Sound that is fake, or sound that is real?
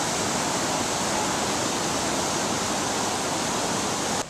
real